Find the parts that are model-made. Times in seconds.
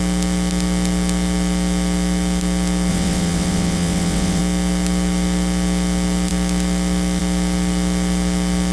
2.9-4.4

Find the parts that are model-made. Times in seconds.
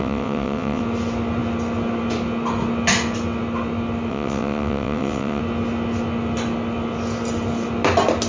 0.0-0.8; 4.1-5.4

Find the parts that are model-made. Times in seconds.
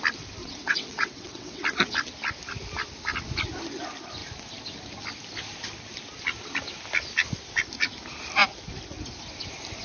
0.4-1.6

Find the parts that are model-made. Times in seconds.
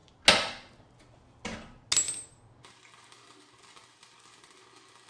none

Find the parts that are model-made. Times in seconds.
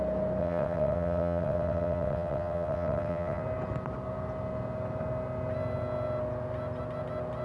0.4-3.4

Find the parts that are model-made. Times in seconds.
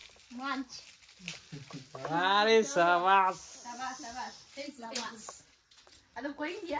4.8-6.8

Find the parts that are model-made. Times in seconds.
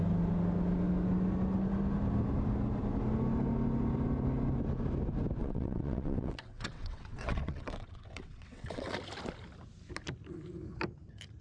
5.4-8.9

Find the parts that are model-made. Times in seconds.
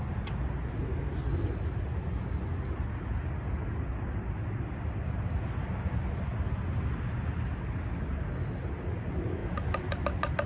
none